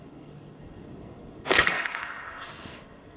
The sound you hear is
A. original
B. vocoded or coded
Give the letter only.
B